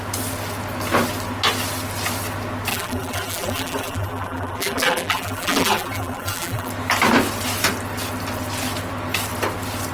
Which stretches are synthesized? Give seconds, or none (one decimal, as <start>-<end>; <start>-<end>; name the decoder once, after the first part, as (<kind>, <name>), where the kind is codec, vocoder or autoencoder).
2.7-6.7 (vocoder, BigVGAN v2)